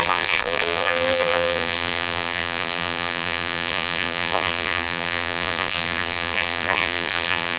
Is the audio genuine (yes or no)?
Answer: no